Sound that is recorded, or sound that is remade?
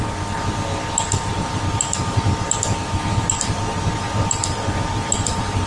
recorded